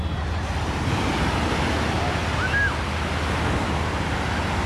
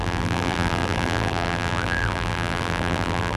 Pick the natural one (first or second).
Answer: first